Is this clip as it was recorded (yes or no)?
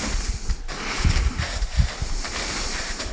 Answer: yes